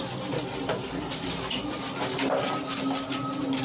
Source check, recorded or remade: recorded